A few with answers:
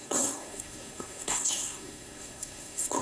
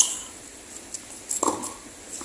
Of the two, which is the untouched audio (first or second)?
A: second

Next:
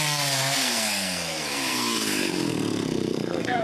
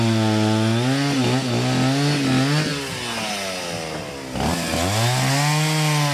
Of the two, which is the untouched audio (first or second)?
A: second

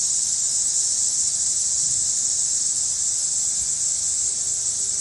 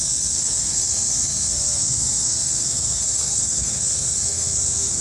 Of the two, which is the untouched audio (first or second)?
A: first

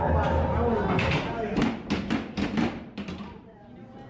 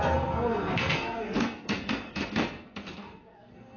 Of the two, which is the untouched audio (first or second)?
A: first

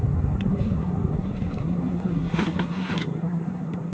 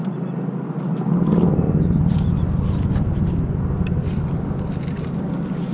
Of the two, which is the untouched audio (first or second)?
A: second